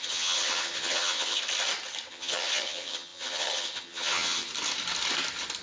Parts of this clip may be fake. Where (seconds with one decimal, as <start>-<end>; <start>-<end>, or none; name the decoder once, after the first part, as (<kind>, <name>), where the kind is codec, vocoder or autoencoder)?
0.0-1.4 (vocoder, HiFi-GAN); 2.1-4.5